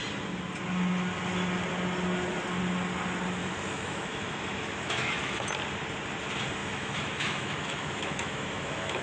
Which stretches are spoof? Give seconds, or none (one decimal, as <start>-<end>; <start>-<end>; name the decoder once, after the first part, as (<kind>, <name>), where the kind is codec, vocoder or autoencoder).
3.4-5.4 (autoencoder, DAC-VAE); 6.6-9.0